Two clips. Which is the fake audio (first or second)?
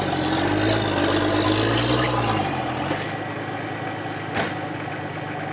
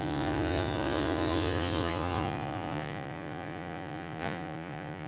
second